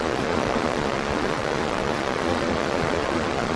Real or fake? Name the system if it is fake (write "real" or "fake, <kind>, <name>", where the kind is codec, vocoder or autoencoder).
fake, vocoder, Vocos